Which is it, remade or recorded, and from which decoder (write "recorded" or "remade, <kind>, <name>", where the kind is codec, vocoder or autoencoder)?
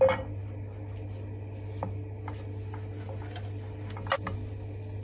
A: recorded